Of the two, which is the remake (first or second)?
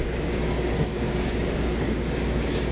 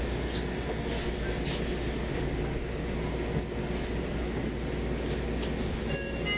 first